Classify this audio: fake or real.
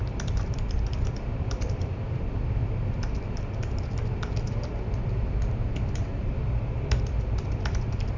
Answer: fake